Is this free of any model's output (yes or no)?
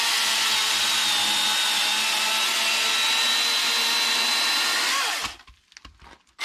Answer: yes